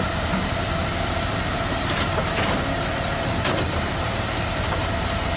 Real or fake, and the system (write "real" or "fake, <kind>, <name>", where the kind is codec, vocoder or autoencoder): fake, vocoder, BigVGAN v2